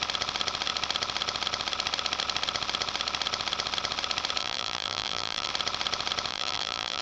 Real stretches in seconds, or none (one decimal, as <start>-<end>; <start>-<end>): 0.0-4.4; 5.5-6.3